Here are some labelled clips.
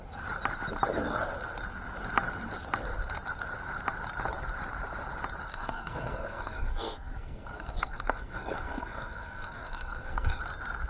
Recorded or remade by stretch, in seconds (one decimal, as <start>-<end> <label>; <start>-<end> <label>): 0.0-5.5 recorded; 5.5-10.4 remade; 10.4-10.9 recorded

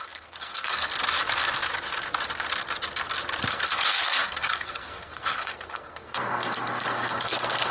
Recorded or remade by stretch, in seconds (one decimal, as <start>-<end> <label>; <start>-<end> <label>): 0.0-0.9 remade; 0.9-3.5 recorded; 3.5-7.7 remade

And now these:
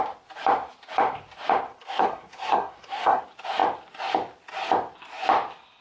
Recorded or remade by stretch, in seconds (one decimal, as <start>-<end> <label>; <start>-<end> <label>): 0.0-1.8 recorded; 1.8-3.2 remade; 3.2-5.8 recorded

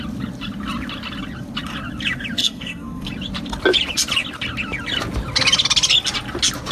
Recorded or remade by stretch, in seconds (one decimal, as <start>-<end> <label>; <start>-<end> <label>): 0.0-2.4 recorded; 2.4-3.1 remade; 3.1-6.7 recorded

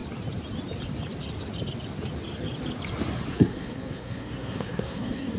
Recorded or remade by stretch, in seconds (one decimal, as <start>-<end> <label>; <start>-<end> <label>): 0.0-3.3 recorded; 3.3-5.4 remade